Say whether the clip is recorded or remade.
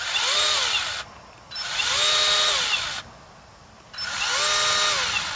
recorded